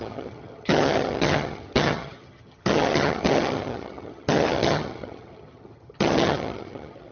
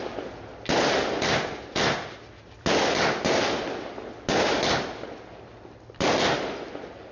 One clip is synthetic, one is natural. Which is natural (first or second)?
second